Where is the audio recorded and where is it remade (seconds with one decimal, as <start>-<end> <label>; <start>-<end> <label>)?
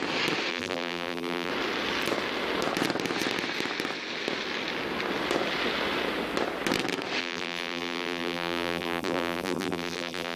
0.0-0.5 recorded; 0.5-1.5 remade; 1.5-7.2 recorded; 7.2-10.4 remade